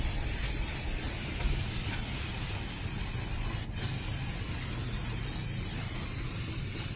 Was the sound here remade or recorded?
recorded